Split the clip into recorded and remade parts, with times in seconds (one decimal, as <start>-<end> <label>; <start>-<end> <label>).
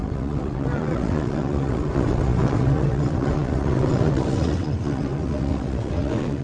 0.0-6.4 remade